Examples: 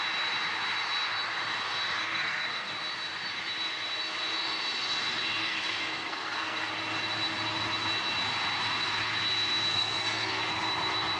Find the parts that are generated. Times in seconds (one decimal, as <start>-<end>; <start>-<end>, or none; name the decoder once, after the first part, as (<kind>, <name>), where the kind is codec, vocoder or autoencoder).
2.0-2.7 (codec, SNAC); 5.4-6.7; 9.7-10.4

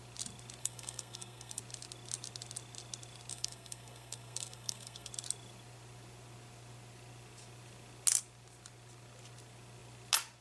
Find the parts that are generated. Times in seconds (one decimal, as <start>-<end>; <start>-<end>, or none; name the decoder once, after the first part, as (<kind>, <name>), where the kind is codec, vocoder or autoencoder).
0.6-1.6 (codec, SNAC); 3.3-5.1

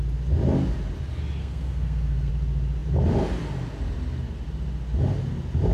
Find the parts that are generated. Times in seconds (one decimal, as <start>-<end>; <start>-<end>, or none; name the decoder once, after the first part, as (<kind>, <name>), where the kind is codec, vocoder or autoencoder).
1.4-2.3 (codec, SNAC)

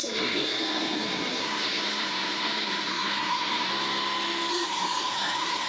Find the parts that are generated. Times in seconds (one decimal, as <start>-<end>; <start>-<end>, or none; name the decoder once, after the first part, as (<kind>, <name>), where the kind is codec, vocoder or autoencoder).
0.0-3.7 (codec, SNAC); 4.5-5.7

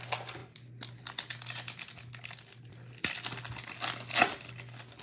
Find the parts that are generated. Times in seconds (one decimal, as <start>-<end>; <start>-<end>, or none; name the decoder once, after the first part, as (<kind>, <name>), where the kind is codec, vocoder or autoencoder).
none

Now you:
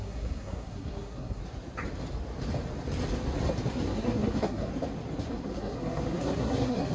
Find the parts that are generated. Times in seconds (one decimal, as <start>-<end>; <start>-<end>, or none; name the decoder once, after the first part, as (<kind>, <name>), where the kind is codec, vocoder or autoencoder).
0.0-1.4 (codec, SNAC); 3.7-4.7; 5.3-6.9

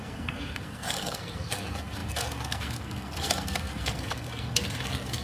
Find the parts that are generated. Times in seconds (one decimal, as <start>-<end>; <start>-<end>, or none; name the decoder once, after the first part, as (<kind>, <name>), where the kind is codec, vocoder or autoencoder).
0.0-5.2 (codec, SNAC)

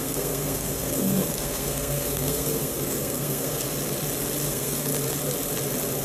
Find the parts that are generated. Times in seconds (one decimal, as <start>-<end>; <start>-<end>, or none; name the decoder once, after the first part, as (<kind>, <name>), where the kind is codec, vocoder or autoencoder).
0.0-3.7 (codec, SNAC); 4.5-4.9